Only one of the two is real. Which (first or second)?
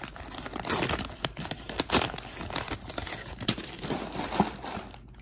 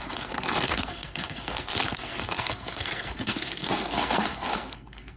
first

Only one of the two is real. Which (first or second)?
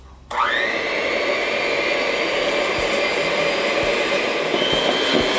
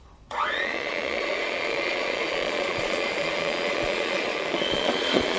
first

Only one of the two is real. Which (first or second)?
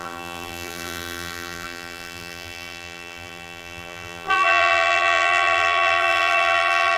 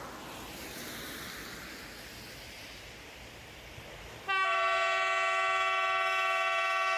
second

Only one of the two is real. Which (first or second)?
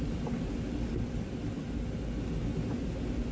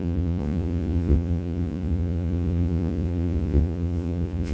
first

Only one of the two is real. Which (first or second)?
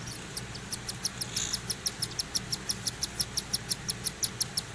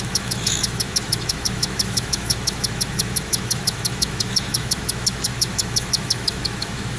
first